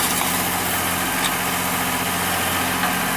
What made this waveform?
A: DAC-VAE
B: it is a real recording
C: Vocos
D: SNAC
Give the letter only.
B